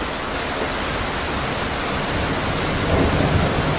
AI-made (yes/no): no